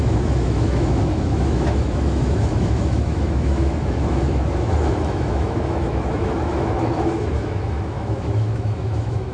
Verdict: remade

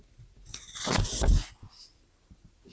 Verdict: recorded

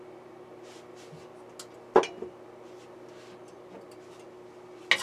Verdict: recorded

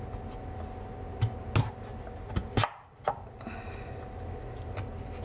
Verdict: recorded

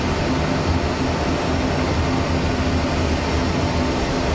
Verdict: recorded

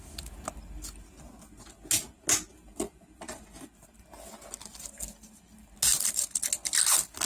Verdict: recorded